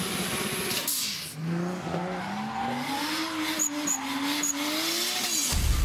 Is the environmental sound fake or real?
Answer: real